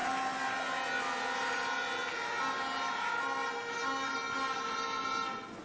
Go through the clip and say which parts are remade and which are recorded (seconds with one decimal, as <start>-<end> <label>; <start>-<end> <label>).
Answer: 0.0-5.6 recorded